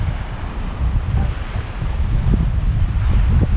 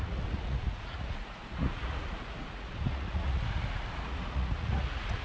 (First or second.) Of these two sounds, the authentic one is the first